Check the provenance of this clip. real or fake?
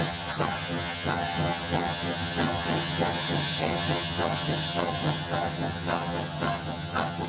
fake